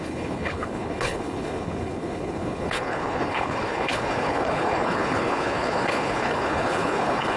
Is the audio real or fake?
fake